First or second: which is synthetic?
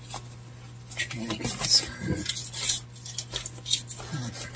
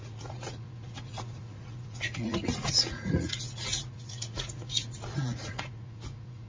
second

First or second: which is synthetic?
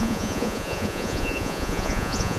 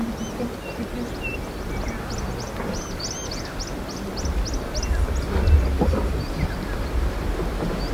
first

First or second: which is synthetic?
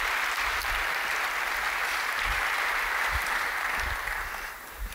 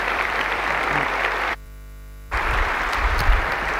second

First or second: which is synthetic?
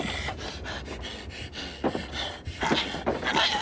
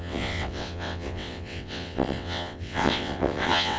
second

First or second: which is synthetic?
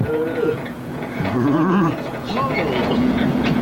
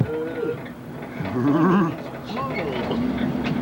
first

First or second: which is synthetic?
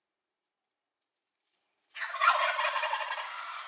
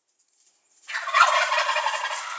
first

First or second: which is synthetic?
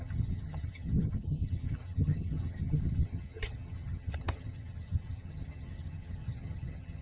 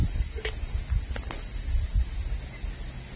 first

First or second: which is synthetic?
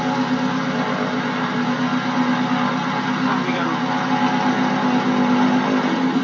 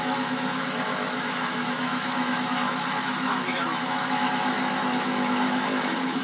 second